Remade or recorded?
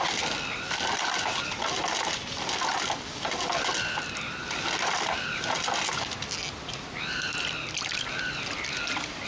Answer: recorded